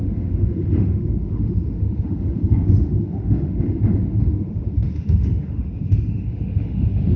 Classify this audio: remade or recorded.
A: remade